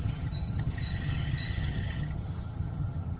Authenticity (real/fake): fake